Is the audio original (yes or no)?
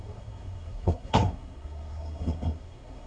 no